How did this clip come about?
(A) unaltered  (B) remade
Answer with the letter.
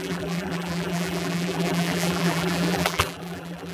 B